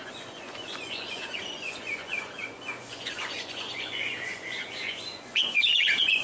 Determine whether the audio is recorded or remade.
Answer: remade